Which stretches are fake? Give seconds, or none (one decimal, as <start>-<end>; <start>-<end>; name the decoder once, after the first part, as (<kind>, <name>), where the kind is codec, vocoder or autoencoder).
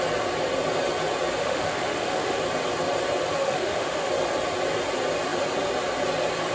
1.4-2.4 (autoencoder, DAC-VAE); 3.4-4.1